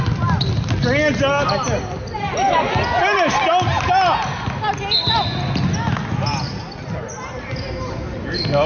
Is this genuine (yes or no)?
yes